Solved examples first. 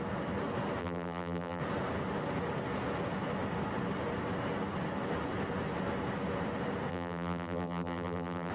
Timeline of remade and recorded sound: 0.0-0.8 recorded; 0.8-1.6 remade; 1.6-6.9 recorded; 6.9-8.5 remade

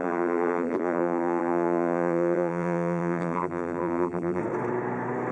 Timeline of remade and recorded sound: 0.0-4.4 remade; 4.4-5.3 recorded

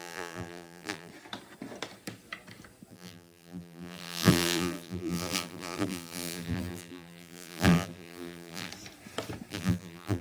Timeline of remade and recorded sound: 0.0-1.1 remade; 1.1-2.9 recorded; 2.9-8.7 remade; 8.7-9.5 recorded; 9.5-10.2 remade

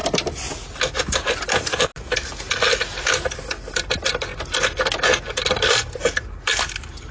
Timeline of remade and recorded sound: 0.0-7.1 recorded

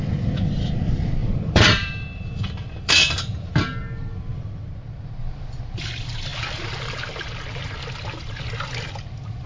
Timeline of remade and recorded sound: 0.0-1.2 recorded; 1.2-3.5 remade; 3.5-5.2 recorded; 5.2-5.8 remade; 5.8-9.5 recorded

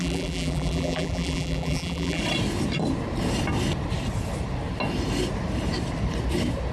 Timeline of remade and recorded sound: 0.0-2.2 remade; 2.2-6.7 recorded

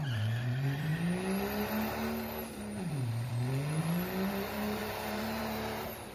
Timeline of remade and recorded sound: 0.0-0.9 remade; 0.9-2.5 recorded; 2.5-3.3 remade; 3.3-3.8 recorded; 3.8-6.1 remade